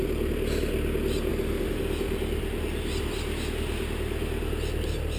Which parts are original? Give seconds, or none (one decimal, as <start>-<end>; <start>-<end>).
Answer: 0.0-5.2